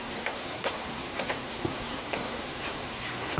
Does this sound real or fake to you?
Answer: fake